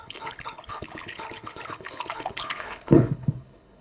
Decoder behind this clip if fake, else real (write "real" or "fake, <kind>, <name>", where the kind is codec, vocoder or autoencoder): fake, codec, HILCodec